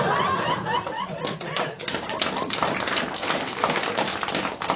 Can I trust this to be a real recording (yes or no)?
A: yes